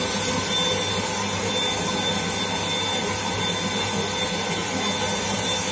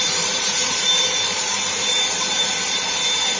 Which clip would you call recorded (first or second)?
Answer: first